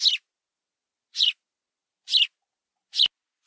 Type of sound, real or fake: real